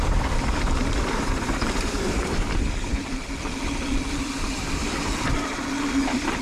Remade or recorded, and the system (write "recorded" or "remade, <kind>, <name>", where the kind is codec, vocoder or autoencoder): remade, vocoder, BigVGAN v2